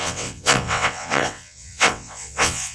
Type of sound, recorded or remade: remade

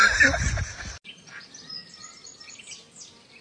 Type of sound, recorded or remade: recorded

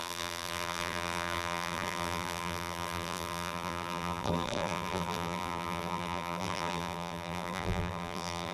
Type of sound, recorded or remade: remade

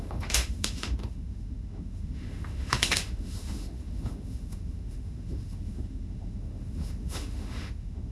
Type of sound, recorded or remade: remade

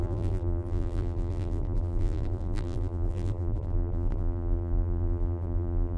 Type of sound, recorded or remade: remade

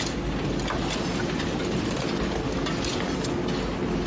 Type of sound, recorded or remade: recorded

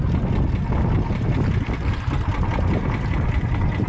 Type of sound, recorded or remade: recorded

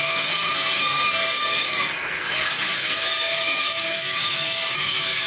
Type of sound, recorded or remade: remade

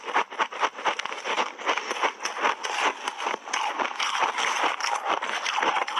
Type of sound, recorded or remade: recorded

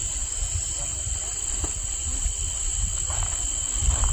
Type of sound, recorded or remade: recorded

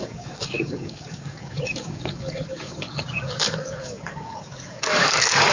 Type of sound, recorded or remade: remade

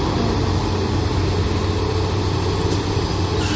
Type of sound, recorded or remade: recorded